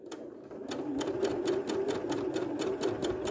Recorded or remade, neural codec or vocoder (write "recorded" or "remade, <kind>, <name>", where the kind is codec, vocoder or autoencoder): recorded